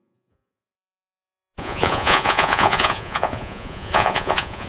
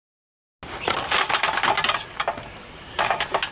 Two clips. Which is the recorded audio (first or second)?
second